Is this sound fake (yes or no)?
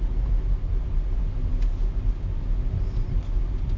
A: no